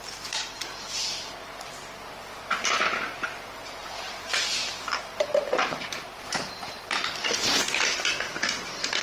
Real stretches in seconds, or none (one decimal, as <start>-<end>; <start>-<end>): 0.0-3.8; 6.8-9.0